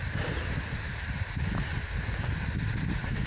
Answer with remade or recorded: recorded